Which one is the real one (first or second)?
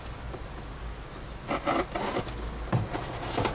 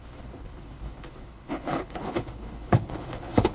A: first